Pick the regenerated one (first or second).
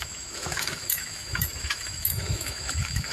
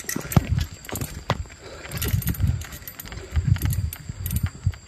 first